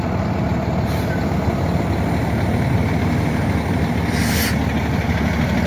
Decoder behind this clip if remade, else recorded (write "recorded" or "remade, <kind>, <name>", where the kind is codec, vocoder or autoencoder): remade, vocoder, BigVGAN v2